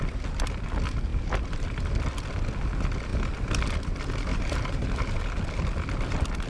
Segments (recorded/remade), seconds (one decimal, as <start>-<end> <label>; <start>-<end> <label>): 0.0-1.1 recorded; 1.1-1.9 remade; 1.9-4.3 recorded; 4.3-5.2 remade; 5.2-6.5 recorded

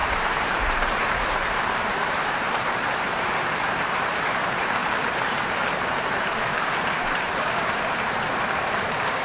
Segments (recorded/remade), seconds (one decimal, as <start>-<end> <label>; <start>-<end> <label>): 0.0-9.2 remade

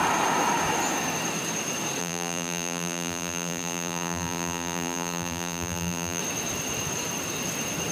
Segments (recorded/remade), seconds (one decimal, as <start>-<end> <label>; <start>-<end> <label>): 0.0-2.0 recorded; 2.0-6.2 remade; 6.2-7.9 recorded

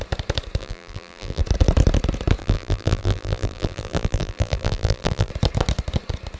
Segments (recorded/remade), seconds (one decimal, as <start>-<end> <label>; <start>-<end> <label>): 0.0-0.6 recorded; 0.6-1.4 remade; 1.4-2.4 recorded; 2.4-5.3 remade; 5.3-6.4 recorded

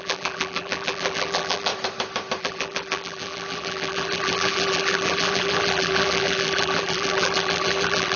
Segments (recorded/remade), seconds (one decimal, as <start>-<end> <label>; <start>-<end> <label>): 0.0-1.7 remade; 1.7-2.4 recorded; 2.4-8.2 remade